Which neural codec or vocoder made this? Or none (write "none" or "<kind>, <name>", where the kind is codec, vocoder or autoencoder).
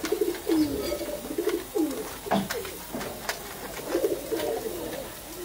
none